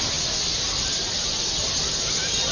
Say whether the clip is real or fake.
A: real